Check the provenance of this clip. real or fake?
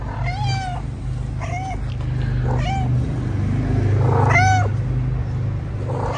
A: real